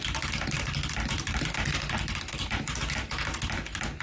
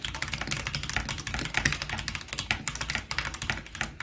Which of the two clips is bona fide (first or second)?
second